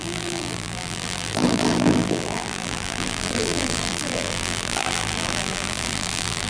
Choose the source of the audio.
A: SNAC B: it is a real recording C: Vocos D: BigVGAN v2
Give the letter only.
D